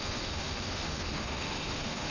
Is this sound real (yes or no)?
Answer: no